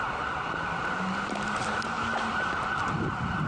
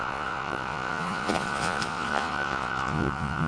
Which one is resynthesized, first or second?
second